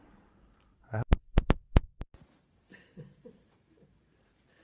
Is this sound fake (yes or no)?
yes